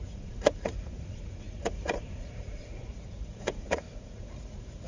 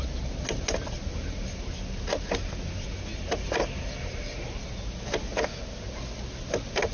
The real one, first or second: second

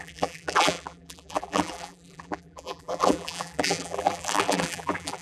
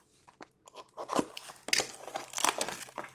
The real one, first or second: second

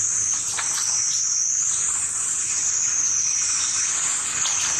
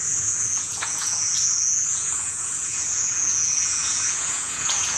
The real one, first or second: first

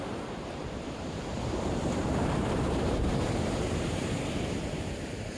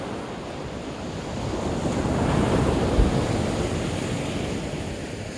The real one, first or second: second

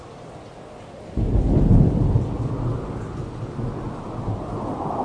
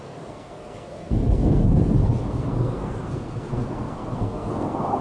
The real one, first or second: first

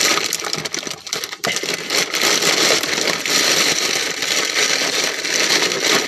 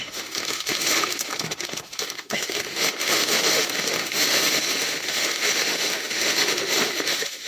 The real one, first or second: first